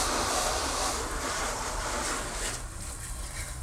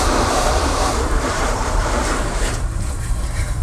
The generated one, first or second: second